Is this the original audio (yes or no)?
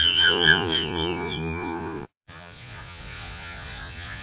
no